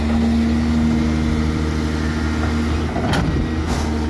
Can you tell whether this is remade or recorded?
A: recorded